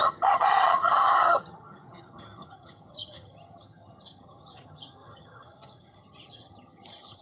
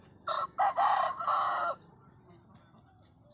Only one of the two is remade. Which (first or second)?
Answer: first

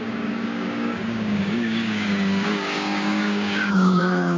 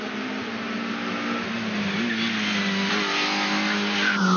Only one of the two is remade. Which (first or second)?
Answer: first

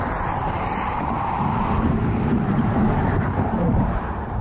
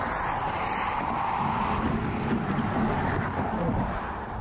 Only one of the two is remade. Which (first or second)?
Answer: first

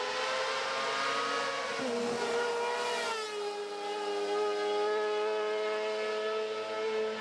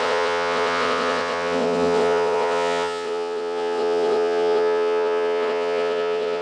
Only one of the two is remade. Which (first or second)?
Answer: second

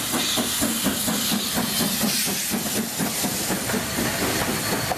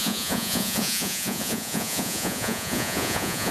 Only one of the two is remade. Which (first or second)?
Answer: second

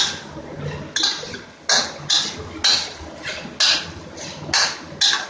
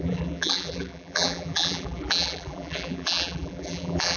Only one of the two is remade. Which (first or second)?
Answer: second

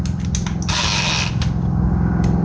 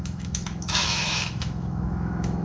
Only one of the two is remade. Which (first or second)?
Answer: second